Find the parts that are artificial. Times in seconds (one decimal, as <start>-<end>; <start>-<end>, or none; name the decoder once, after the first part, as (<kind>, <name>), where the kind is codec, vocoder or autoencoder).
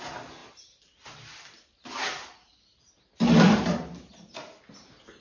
none